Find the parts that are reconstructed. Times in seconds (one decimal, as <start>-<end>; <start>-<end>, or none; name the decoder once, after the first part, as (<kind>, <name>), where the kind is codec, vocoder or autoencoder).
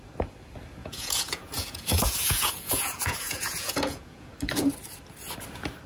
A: 0.8-4.3 (vocoder, Vocos)